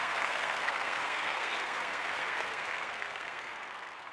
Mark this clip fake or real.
fake